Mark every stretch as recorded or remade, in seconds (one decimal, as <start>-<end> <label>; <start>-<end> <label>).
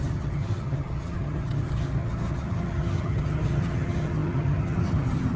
0.0-5.4 remade